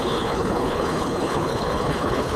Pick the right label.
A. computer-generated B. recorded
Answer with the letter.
A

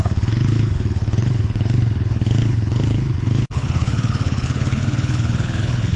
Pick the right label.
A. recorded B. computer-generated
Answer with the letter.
B